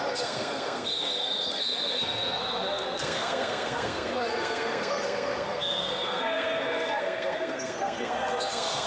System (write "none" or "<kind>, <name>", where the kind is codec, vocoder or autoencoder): codec, SNAC